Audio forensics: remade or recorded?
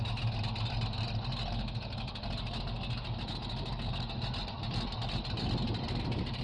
recorded